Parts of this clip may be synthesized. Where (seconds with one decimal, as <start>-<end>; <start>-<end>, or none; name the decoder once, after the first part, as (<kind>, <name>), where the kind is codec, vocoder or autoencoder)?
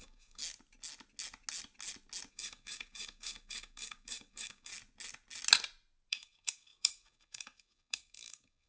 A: 0.0-0.4 (codec, DAC); 2.3-4.7; 6.1-8.7